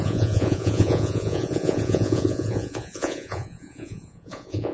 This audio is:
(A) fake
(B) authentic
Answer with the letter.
A